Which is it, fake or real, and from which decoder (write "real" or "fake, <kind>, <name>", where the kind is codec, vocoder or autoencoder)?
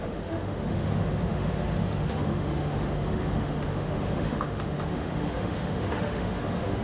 fake, autoencoder, DAC-VAE